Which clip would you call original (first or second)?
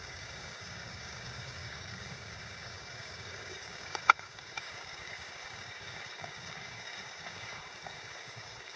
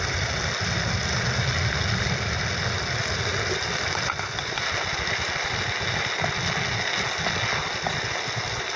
second